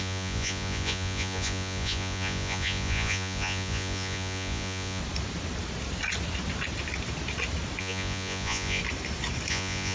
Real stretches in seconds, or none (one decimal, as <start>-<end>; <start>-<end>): 5.0-7.8; 8.8-9.5